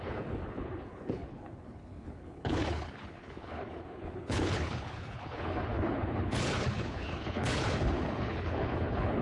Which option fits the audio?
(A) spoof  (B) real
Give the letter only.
A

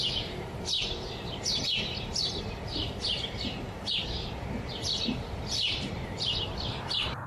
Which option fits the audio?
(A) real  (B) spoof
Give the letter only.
B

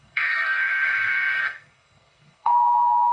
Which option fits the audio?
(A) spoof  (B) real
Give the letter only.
A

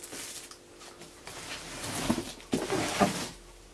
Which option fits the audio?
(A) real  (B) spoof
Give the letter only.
A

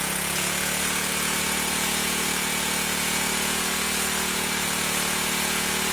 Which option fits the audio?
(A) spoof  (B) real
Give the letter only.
A